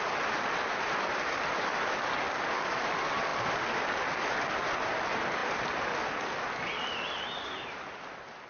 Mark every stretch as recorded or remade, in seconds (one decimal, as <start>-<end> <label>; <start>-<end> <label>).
0.0-8.5 recorded